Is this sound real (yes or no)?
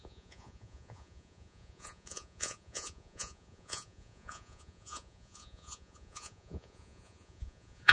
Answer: no